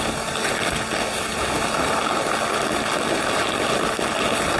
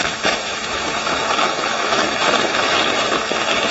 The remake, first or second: second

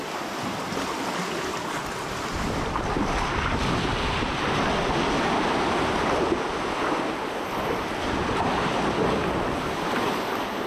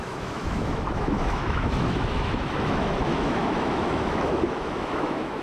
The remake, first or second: second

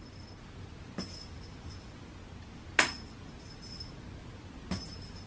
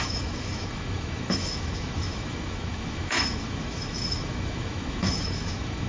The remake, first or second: second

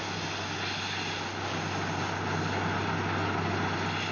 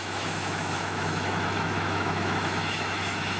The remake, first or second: second